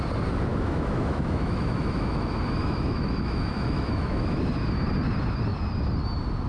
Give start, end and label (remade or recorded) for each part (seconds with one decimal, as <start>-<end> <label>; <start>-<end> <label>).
0.0-0.5 recorded; 0.5-4.4 remade; 4.4-6.5 recorded